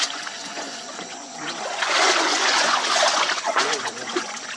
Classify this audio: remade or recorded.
remade